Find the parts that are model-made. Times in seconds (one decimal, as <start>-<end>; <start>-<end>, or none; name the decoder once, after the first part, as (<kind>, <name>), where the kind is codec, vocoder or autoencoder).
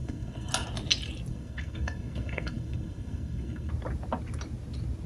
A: 0.0-0.5 (codec, SNAC); 1.3-3.7